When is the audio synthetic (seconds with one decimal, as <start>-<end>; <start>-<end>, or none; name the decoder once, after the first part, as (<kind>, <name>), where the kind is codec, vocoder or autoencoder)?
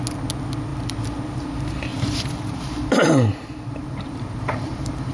1.9-5.1 (vocoder, BigVGAN v2)